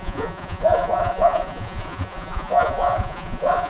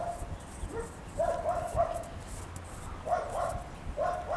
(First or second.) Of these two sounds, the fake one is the first